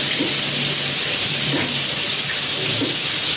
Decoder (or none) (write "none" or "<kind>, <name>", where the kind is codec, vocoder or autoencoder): none